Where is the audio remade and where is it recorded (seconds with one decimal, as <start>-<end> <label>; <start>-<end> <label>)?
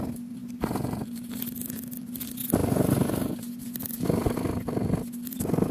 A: 0.0-0.4 recorded; 0.4-1.4 remade; 1.4-2.6 recorded; 2.6-3.3 remade; 3.3-5.7 recorded